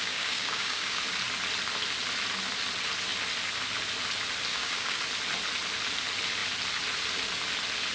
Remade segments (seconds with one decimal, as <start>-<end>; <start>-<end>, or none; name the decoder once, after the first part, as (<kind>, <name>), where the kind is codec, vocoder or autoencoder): 0.0-1.0 (codec, DAC); 4.5-5.0